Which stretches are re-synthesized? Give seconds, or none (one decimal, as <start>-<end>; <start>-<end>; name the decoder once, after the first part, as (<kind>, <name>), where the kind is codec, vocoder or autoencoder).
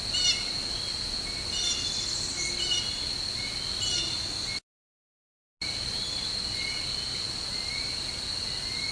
none